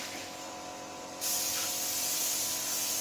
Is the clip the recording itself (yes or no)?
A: yes